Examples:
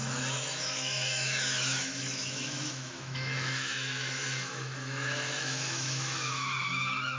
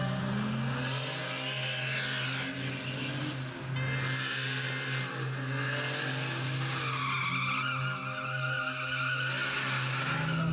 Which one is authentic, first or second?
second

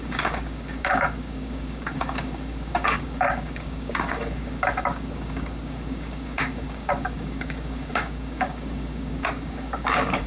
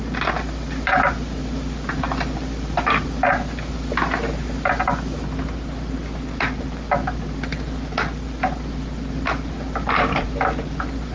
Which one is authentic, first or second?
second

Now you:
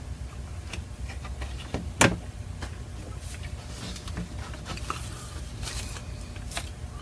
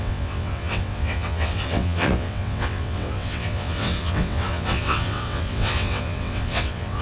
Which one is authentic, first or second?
first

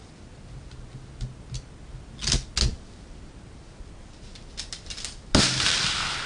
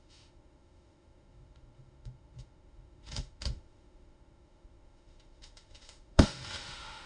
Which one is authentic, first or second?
first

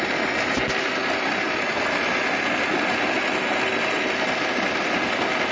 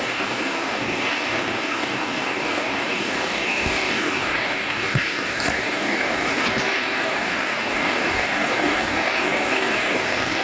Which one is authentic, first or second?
first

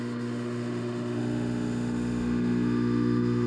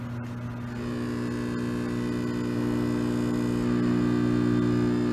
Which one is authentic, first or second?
second